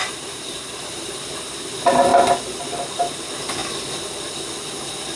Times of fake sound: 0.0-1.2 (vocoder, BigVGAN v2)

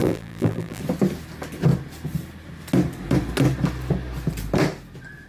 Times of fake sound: 0.0-0.8 (vocoder, BigVGAN v2)

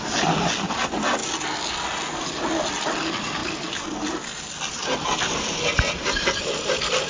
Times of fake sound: none

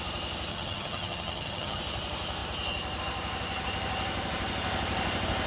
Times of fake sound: 0.5-1.8 (vocoder, HiFi-GAN)

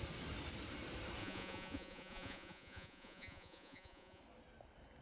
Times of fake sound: 1.2-4.2 (vocoder, Vocos)

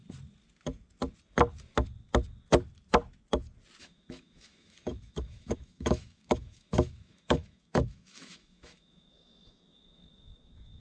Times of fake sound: 3.8-10.8 (autoencoder, DAC-VAE)

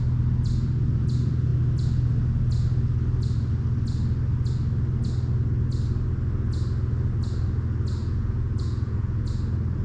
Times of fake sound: 8.0-9.3 (vocoder, Vocos)